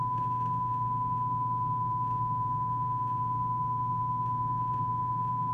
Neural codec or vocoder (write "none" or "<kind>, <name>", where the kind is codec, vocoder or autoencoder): autoencoder, DAC-VAE